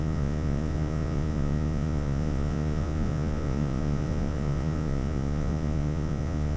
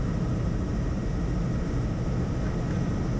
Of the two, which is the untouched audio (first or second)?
second